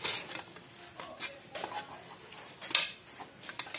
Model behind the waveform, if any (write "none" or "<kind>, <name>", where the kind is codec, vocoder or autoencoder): none